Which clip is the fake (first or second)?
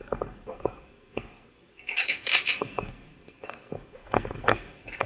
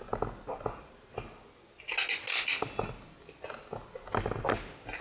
first